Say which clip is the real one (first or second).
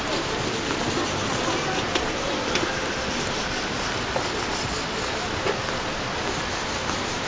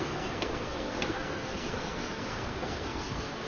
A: first